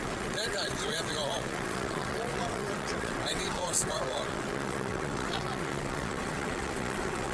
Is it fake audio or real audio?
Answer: fake